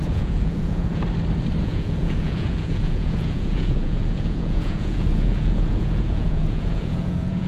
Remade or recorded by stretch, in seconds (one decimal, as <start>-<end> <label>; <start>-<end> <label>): 0.0-1.0 remade; 1.0-1.6 recorded; 1.6-7.5 remade